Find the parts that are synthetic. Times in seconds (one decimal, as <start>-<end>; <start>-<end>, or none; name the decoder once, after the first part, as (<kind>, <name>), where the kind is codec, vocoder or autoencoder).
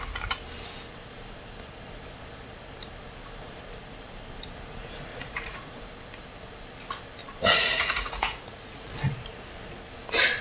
5.1-5.7 (vocoder, Vocos); 7.2-8.9